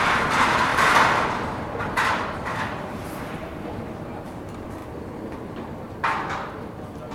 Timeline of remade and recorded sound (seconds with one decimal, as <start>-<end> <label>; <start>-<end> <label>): 0.0-4.8 remade; 4.8-7.1 recorded